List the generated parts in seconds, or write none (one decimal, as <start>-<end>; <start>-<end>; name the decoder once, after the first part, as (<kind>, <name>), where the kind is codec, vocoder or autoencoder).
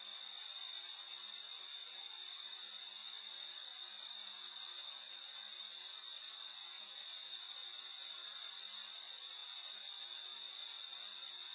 none